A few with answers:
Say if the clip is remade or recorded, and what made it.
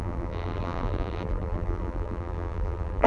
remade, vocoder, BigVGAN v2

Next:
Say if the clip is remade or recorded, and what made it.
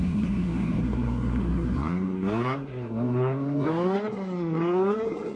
remade, codec, SNAC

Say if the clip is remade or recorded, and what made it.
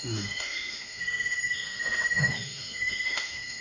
remade, autoencoder, DAC-VAE